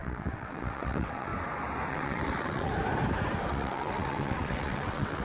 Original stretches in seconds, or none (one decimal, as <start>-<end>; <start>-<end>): 1.3-1.9; 2.7-3.5